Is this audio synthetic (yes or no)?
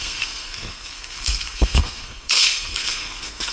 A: yes